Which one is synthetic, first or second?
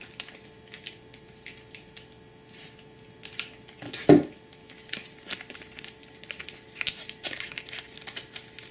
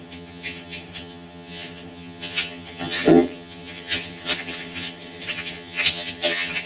second